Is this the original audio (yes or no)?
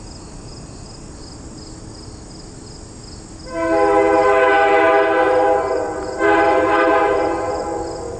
yes